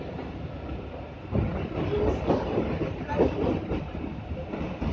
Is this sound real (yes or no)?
yes